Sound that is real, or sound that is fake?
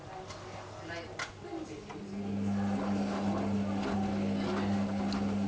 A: real